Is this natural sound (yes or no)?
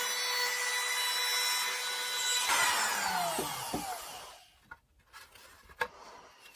yes